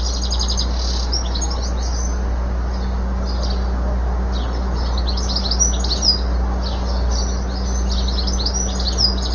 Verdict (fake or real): real